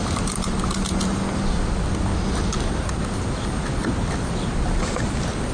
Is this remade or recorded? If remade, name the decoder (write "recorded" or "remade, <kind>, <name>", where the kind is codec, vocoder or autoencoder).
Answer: recorded